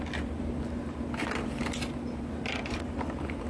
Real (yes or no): yes